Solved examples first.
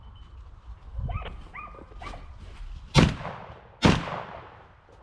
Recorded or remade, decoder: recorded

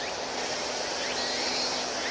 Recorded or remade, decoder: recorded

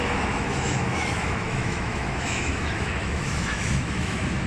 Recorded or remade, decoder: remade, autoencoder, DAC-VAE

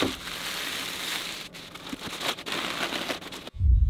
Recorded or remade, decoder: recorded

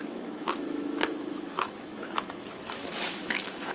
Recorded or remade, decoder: remade, autoencoder, DAC-VAE